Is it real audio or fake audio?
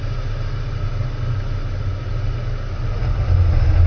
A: real